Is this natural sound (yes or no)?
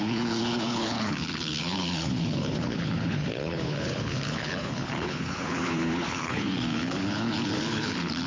no